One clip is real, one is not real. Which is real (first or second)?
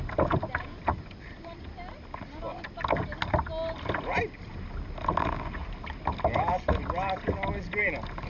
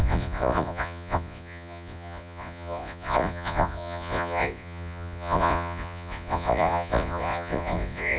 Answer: first